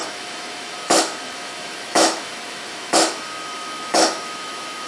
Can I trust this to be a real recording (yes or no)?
no